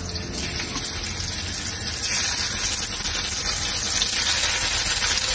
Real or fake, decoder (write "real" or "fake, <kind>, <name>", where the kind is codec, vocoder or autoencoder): real